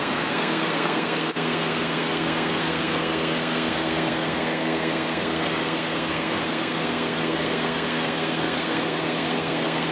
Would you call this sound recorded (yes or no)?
no